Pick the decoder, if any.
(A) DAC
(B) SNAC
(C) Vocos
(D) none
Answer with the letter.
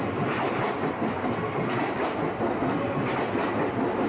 D